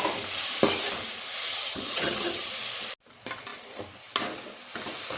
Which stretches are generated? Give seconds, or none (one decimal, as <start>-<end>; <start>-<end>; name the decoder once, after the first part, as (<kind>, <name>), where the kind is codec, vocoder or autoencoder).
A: 1.5-2.5 (vocoder, HiFi-GAN)